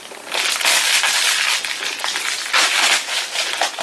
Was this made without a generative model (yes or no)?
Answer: yes